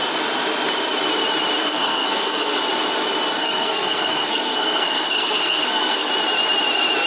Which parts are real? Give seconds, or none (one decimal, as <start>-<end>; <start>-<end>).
0.0-1.6; 2.6-3.4; 6.1-7.1